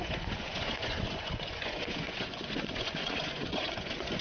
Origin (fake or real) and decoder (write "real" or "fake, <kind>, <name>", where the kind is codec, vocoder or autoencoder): fake, vocoder, Vocos